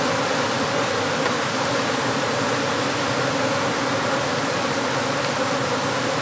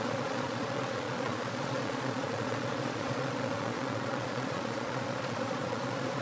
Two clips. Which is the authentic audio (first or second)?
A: first